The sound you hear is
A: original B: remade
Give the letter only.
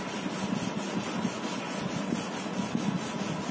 A